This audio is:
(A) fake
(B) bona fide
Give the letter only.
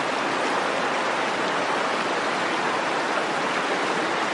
B